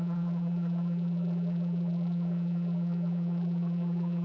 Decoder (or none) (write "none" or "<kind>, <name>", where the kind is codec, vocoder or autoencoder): vocoder, BigVGAN v2